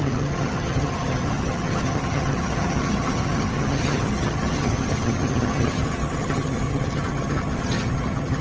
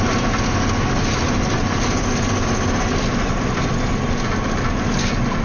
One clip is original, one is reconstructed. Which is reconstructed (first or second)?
first